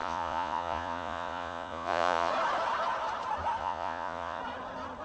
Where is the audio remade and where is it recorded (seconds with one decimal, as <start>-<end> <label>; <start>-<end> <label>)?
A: 0.0-2.3 remade; 2.3-3.6 recorded; 3.6-4.4 remade; 4.4-5.0 recorded